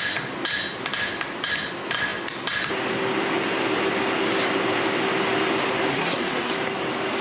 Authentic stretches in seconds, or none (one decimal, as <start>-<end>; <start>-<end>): 0.0-5.9; 6.5-7.2